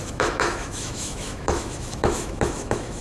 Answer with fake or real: fake